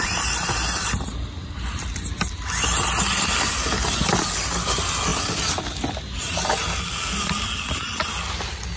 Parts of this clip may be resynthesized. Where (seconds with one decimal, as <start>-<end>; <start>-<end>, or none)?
none